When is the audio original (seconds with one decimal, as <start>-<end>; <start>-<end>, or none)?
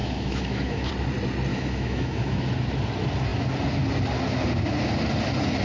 0.9-1.5; 2.5-5.6